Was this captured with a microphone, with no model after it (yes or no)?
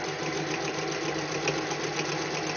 yes